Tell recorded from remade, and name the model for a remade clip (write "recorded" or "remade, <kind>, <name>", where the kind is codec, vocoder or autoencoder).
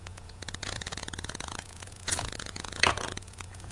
remade, vocoder, Vocos